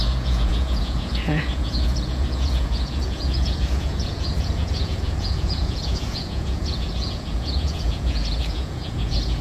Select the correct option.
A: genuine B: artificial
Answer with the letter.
B